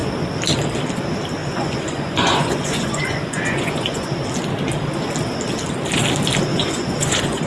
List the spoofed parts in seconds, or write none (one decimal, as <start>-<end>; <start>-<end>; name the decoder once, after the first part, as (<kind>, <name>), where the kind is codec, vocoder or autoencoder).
1.4-4.1 (vocoder, Vocos); 6.5-7.5

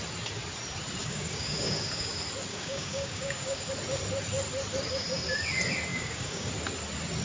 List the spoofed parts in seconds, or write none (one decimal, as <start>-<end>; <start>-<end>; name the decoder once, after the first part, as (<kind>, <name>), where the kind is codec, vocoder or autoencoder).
1.0-2.1 (codec, DAC); 2.5-3.7; 5.9-6.5

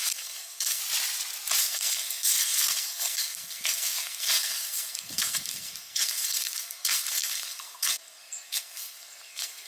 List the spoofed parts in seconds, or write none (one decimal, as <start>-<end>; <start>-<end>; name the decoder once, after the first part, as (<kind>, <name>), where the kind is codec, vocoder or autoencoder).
0.0-0.8 (codec, SNAC); 1.6-9.7

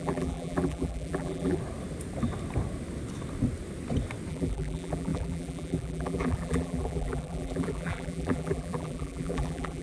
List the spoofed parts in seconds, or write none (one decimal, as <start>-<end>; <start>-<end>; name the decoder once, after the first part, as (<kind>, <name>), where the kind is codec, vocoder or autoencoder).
0.0-1.6 (vocoder, BigVGAN v2); 4.3-9.8

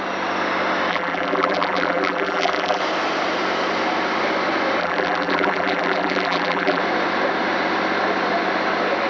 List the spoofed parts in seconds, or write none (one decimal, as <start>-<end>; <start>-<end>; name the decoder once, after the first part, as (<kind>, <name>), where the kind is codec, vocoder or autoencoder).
0.9-2.8 (vocoder, BigVGAN v2); 4.8-6.8

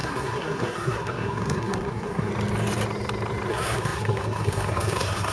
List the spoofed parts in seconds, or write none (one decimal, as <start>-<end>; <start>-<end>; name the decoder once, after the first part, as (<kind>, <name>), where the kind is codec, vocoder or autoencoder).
0.0-2.3 (codec, SNAC); 3.5-5.3